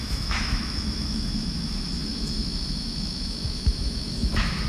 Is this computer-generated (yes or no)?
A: yes